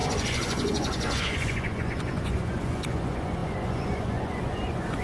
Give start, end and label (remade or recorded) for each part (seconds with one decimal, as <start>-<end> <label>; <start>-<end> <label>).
0.0-5.0 remade